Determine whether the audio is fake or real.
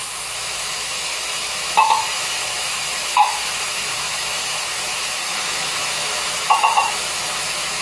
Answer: fake